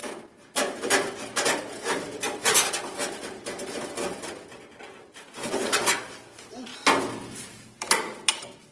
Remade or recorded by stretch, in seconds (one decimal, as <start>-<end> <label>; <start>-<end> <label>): 0.0-6.7 remade; 6.7-7.4 recorded; 7.4-8.7 remade